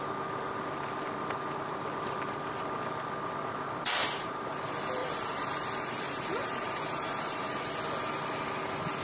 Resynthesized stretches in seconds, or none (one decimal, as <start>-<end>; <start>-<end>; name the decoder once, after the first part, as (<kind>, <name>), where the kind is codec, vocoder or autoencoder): 4.0-4.5 (vocoder, BigVGAN v2); 5.0-7.7